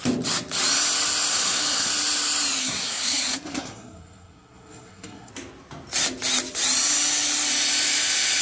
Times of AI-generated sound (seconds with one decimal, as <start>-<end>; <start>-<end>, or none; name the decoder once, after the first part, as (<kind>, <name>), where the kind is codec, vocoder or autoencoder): 1.3-1.9 (codec, SNAC); 2.6-5.3